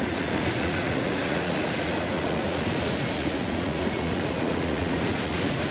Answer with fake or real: fake